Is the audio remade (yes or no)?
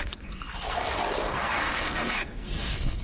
yes